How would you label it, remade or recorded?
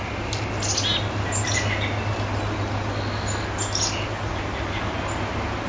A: recorded